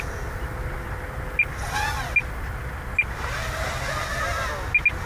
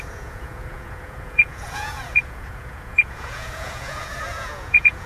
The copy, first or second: second